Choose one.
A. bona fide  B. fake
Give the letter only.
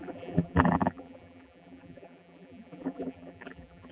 B